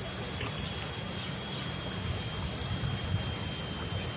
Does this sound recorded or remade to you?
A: recorded